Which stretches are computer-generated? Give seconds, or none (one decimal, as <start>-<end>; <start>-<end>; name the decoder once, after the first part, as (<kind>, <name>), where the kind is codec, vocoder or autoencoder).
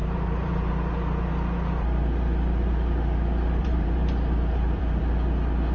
0.0-0.7 (vocoder, BigVGAN v2); 3.6-5.0